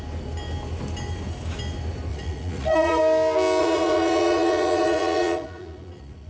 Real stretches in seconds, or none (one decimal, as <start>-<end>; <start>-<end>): 0.0-2.1; 3.0-3.6